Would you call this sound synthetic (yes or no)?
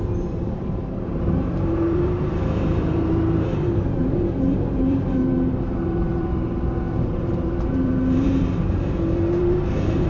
yes